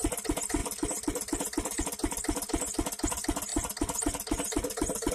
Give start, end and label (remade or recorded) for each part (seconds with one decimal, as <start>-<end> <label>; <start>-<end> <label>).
0.0-0.6 recorded; 0.6-1.8 remade; 1.8-5.1 recorded